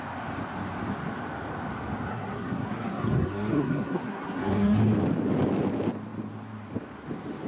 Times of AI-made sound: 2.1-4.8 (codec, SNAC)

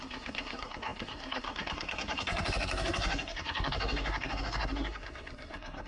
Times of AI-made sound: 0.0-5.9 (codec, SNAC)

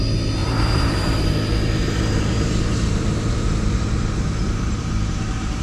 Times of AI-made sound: 0.4-1.3 (vocoder, BigVGAN v2); 1.8-5.6

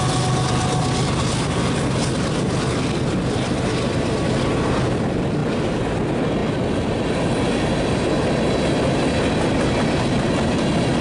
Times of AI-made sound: none

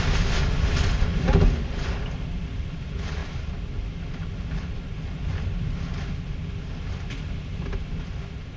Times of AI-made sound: none

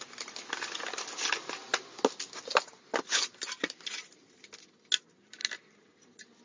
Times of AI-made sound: none